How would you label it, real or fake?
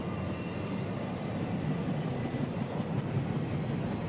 real